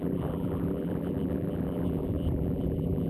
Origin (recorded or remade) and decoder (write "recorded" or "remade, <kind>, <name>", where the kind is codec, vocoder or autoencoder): remade, vocoder, BigVGAN v2